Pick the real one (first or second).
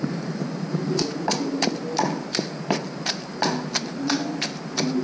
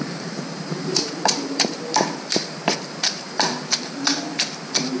first